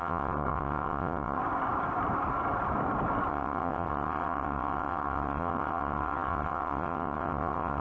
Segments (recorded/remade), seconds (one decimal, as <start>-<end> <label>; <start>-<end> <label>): 0.0-1.4 remade; 1.4-3.3 recorded; 3.3-7.8 remade